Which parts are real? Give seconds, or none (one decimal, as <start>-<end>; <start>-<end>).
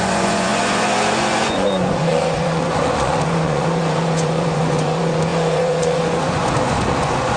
none